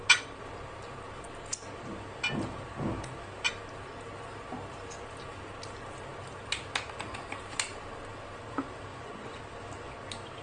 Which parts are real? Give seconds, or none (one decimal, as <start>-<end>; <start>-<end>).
0.0-8.9; 9.4-10.4